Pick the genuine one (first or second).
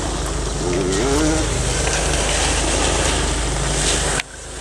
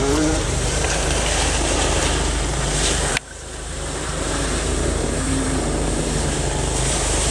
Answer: first